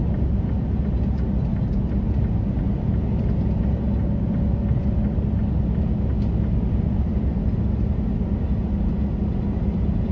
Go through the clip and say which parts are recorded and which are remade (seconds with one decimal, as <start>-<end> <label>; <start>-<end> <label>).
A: 0.0-1.5 recorded; 1.5-2.2 remade; 2.2-10.1 recorded